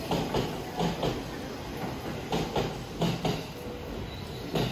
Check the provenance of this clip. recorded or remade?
recorded